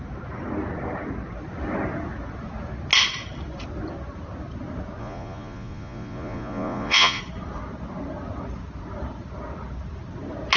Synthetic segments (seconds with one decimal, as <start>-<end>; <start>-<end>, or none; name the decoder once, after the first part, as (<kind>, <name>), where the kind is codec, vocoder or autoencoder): 5.0-7.2 (vocoder, Vocos)